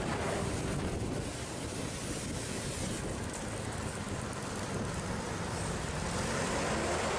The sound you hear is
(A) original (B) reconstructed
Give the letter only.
B